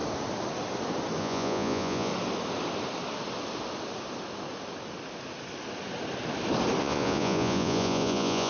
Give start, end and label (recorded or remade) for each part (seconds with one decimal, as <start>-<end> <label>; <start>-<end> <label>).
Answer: 0.0-1.2 recorded; 1.2-2.1 remade; 2.1-6.8 recorded; 6.8-8.5 remade